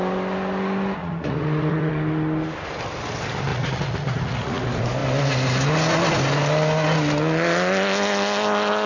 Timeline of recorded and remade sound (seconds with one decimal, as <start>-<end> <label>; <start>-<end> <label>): 0.0-1.0 recorded; 1.0-1.9 remade; 1.9-3.5 recorded; 3.5-4.6 remade; 4.6-8.9 recorded